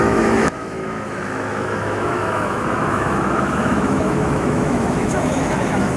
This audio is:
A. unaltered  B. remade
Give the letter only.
B